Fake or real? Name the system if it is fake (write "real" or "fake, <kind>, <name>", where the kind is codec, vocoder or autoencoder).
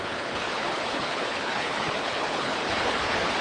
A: fake, codec, HILCodec